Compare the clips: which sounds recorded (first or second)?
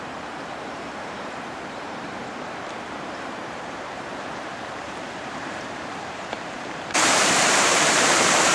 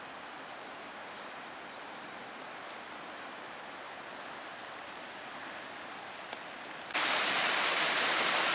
second